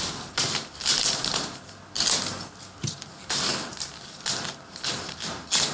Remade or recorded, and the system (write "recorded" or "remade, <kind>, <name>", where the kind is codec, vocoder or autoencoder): recorded